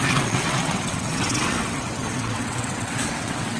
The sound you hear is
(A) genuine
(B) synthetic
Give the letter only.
B